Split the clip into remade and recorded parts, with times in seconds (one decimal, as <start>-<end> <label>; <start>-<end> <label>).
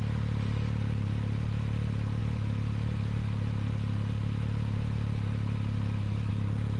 0.0-6.8 recorded